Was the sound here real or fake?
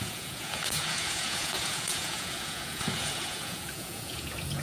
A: fake